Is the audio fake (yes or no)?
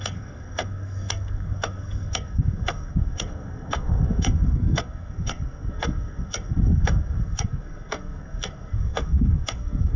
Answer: yes